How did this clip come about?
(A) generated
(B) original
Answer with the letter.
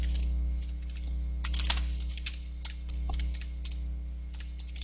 B